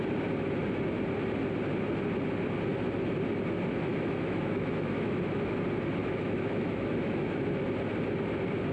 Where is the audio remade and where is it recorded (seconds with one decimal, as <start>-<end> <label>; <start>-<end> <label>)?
0.0-3.9 recorded; 3.9-5.2 remade; 5.2-6.0 recorded; 6.0-7.4 remade; 7.4-8.7 recorded